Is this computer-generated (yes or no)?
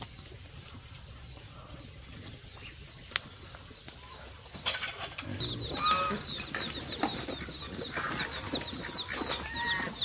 no